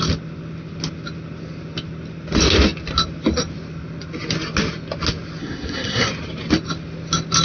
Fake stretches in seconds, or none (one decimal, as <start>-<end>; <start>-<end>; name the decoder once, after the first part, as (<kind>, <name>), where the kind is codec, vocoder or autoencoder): 5.4-6.1 (codec, SNAC)